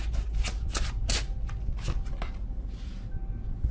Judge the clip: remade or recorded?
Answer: recorded